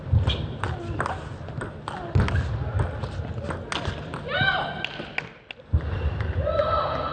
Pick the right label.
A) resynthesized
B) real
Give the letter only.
B